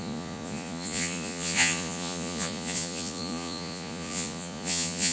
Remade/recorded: remade